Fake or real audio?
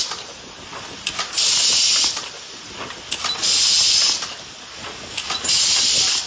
real